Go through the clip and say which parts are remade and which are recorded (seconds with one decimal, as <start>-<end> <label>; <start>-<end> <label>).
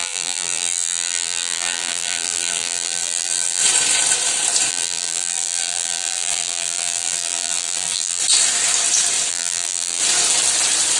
0.0-3.6 remade; 3.6-4.7 recorded; 4.7-8.2 remade; 8.2-9.3 recorded; 9.3-10.0 remade; 10.0-11.0 recorded